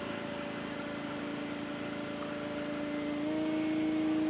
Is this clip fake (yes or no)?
no